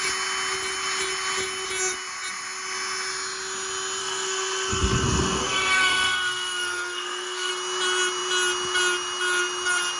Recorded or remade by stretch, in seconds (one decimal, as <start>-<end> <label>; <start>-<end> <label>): 0.0-4.0 recorded; 4.0-7.5 remade; 7.5-10.0 recorded